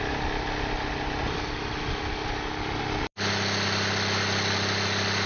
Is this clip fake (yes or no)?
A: no